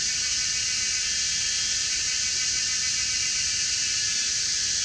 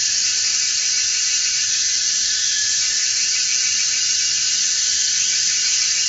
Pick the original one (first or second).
first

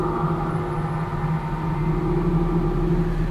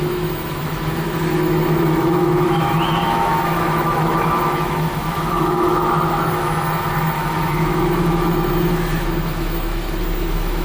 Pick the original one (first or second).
first